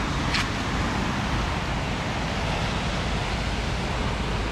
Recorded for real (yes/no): yes